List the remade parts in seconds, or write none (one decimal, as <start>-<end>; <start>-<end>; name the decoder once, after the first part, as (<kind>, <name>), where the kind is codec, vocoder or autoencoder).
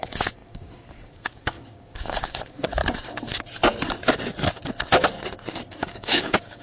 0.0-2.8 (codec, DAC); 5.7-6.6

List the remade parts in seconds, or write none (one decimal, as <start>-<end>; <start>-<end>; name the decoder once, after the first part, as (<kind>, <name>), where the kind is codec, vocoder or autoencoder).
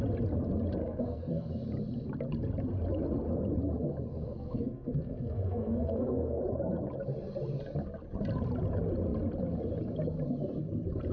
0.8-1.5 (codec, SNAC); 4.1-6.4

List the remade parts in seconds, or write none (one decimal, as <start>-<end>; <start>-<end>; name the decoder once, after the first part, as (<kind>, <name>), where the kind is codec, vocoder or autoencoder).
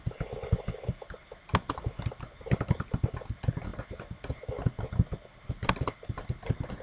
none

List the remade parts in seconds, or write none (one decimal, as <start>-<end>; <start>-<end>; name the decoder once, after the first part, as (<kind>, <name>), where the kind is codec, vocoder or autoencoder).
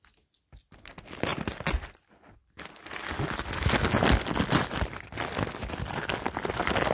none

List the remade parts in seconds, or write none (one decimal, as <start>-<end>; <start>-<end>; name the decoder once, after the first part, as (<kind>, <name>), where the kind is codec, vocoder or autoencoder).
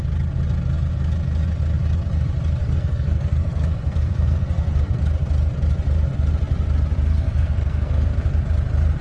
2.6-5.0 (codec, SNAC); 7.1-8.1